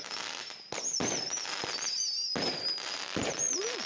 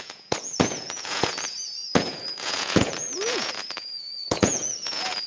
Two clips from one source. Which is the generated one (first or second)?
second